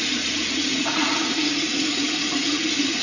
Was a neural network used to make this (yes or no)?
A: yes